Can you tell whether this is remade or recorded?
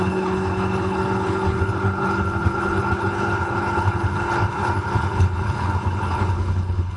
remade